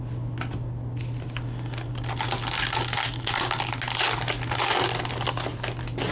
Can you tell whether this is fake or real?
real